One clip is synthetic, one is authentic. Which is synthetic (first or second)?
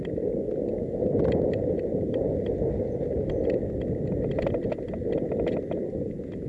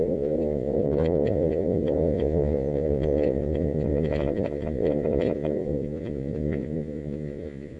second